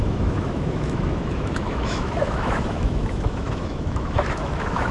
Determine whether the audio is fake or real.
fake